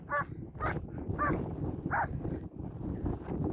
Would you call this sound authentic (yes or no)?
yes